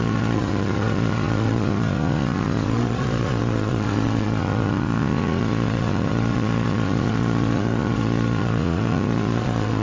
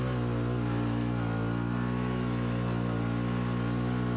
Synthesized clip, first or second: first